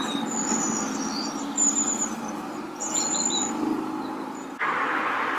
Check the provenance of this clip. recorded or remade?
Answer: recorded